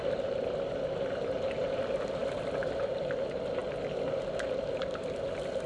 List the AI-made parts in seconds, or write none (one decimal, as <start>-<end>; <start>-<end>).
none